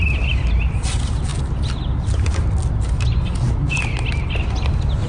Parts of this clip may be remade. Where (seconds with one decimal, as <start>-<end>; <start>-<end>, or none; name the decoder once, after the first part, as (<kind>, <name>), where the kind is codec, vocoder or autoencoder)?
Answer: none